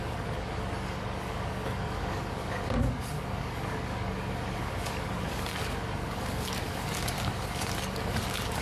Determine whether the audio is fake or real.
fake